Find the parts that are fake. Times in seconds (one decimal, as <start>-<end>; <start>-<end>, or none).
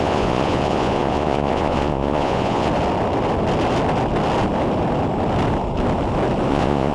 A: 0.0-2.7; 6.5-6.9